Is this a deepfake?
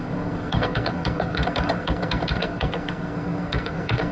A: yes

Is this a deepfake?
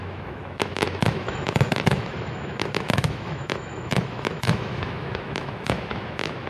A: yes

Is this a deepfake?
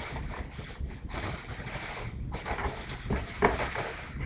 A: no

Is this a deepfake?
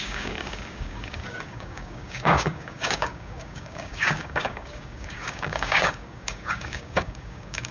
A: yes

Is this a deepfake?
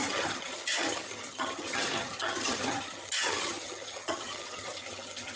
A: yes